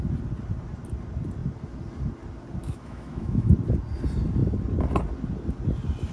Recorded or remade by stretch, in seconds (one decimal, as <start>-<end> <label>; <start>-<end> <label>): 0.0-2.6 recorded; 2.6-3.5 remade; 3.5-6.1 recorded